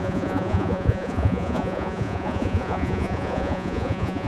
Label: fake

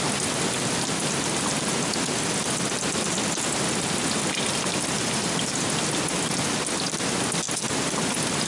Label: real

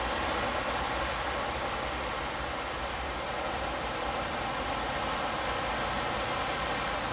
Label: real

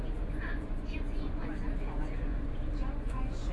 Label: fake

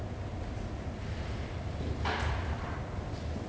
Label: real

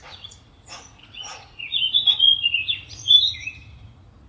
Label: fake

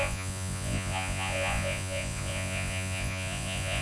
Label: fake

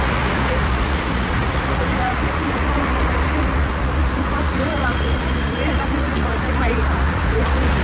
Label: fake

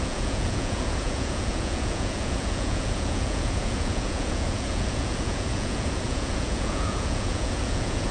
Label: fake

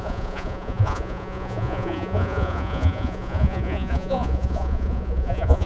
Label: fake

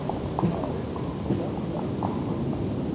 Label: real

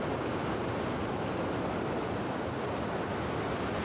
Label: real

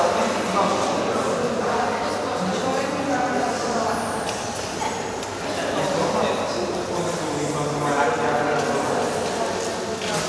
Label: real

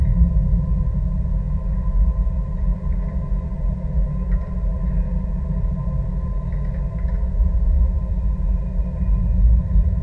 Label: real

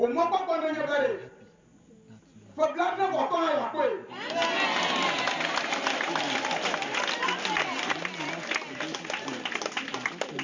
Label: real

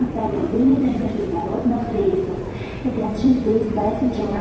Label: fake